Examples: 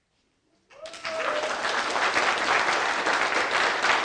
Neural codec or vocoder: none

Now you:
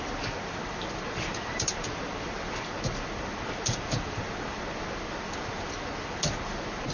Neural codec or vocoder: none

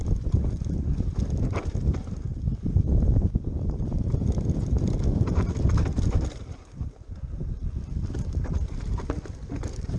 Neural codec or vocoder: vocoder, BigVGAN v2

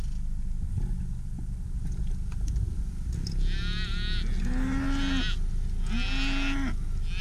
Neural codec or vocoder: none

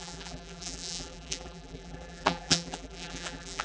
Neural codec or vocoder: vocoder, BigVGAN v2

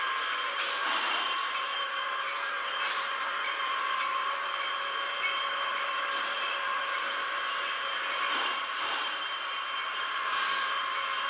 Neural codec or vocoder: vocoder, BigVGAN v2